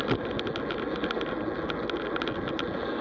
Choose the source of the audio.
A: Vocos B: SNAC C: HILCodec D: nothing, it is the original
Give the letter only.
D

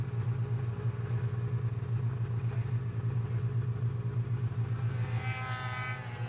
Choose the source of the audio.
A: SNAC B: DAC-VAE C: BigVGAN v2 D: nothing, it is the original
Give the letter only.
D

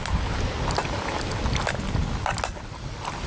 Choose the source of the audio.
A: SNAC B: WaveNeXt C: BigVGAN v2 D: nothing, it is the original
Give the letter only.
D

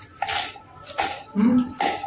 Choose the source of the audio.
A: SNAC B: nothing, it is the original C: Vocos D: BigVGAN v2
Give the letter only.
B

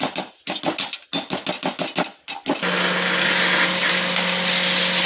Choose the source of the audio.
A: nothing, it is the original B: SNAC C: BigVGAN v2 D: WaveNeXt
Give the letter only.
A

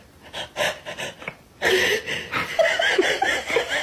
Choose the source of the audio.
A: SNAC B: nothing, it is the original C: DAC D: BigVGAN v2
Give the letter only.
B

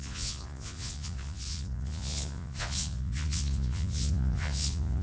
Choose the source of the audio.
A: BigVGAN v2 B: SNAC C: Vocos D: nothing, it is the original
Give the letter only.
C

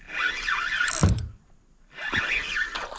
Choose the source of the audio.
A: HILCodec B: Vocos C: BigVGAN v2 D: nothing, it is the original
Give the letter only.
D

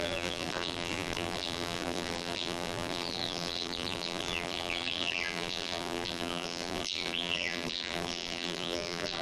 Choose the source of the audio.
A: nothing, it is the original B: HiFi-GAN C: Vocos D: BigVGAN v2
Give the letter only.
D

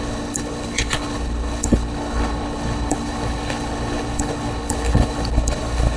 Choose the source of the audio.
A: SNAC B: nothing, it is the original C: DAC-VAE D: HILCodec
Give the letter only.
D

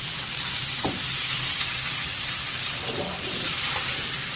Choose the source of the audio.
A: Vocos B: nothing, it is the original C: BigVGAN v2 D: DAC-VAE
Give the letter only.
C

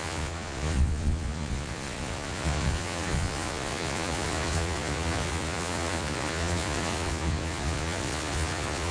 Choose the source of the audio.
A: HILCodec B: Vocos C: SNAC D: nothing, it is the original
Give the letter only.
B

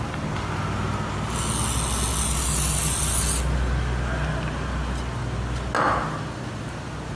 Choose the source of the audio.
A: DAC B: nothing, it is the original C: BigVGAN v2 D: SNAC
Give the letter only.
B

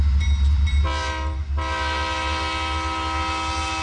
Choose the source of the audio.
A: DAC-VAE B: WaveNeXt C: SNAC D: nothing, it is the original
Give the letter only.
D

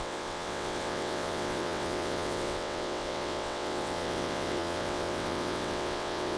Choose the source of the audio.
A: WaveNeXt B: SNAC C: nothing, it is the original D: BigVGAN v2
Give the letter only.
A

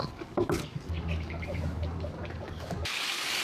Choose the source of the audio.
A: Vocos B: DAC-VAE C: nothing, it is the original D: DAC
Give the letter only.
D